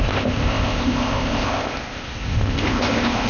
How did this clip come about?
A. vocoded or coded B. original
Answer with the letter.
A